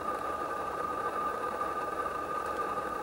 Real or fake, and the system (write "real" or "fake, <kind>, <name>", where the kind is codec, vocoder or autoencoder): fake, vocoder, BigVGAN v2